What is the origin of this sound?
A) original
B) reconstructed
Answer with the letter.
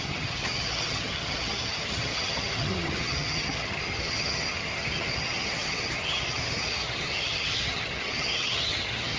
B